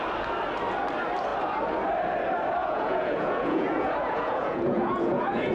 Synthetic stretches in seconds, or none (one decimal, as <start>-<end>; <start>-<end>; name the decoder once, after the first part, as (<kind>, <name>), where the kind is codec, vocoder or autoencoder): 2.6-5.5 (vocoder, Vocos)